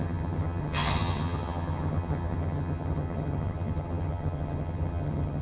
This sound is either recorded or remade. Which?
remade